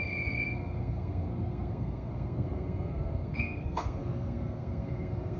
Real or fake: fake